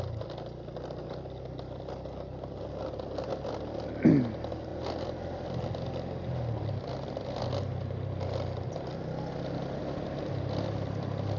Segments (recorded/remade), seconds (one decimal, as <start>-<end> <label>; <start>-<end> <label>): 0.0-11.4 recorded